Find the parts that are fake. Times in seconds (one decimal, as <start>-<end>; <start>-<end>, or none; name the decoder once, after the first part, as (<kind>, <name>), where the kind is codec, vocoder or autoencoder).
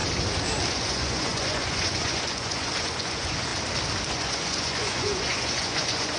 0.7-3.5 (vocoder, Vocos); 4.1-6.2